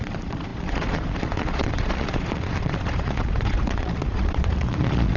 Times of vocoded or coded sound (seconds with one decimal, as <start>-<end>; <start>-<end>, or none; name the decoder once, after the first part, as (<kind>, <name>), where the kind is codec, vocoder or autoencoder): 0.0-5.2 (vocoder, Vocos)